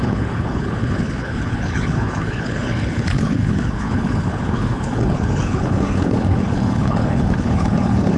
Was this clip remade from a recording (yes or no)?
yes